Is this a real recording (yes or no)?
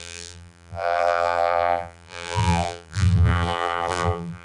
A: no